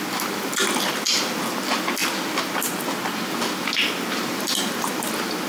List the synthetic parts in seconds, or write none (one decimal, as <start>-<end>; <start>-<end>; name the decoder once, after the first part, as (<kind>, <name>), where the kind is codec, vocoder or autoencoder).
4.3-5.1 (vocoder, BigVGAN v2)